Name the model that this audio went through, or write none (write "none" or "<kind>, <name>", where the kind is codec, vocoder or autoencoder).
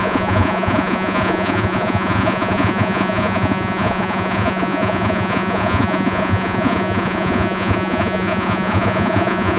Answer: vocoder, Vocos